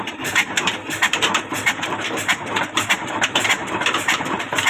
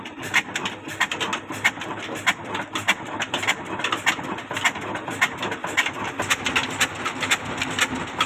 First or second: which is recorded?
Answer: second